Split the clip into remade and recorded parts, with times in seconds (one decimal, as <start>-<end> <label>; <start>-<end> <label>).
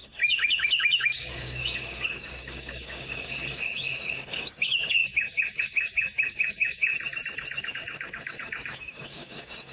0.0-6.9 remade; 6.9-7.7 recorded; 7.7-9.7 remade